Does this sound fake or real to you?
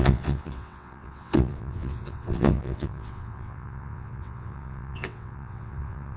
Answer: fake